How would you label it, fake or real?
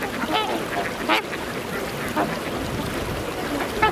real